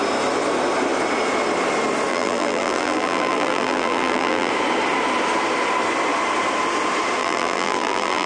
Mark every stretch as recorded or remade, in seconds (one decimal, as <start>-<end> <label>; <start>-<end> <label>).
0.0-2.1 recorded; 2.1-4.5 remade; 4.5-7.2 recorded; 7.2-8.3 remade

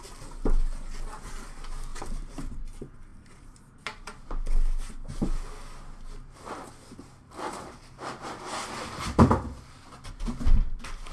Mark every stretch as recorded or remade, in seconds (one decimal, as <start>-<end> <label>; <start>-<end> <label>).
0.0-1.9 recorded; 1.9-2.6 remade; 2.6-3.1 recorded; 3.1-4.2 remade; 4.2-7.2 recorded; 7.2-8.4 remade; 8.4-11.1 recorded

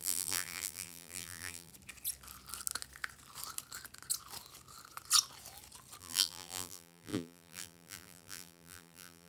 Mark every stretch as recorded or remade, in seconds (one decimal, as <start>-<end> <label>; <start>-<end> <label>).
0.0-1.7 remade; 1.7-6.0 recorded; 6.0-9.3 remade

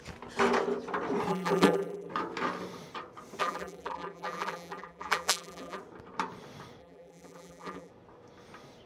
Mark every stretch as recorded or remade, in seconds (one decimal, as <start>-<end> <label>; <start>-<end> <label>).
0.0-1.3 recorded; 1.3-2.1 remade; 2.1-3.4 recorded; 3.4-5.8 remade; 5.8-6.8 recorded; 6.8-7.9 remade; 7.9-8.9 recorded

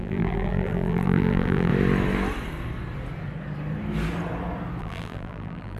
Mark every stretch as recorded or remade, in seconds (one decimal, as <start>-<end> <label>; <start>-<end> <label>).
0.0-1.7 remade; 1.7-4.8 recorded; 4.8-5.8 remade

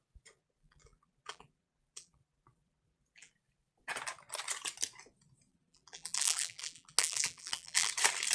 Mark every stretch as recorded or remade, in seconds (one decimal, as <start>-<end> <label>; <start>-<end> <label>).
0.0-0.4 recorded; 0.4-3.3 remade; 3.3-5.5 recorded; 5.5-7.9 remade; 7.9-8.3 recorded

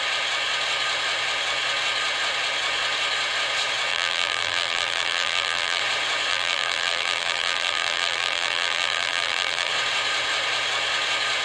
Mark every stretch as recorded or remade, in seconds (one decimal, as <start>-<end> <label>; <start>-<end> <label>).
0.0-3.9 recorded; 3.9-5.8 remade; 5.8-6.3 recorded; 6.3-9.7 remade; 9.7-11.4 recorded